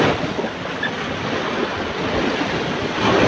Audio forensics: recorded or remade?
recorded